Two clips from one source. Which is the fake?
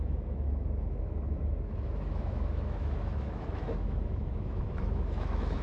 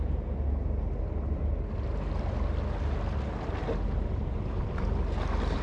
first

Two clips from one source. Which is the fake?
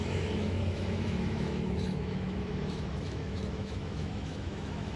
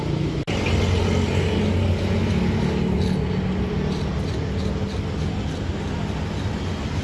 first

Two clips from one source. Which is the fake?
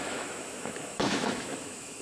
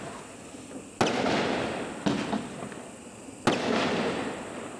first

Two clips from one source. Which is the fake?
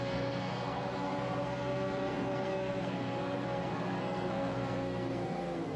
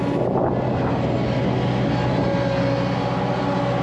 first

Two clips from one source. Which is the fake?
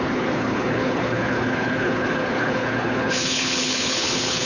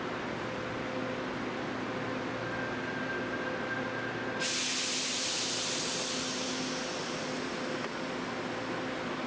first